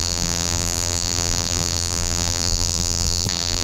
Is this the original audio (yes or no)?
no